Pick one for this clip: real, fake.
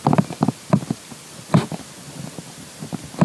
real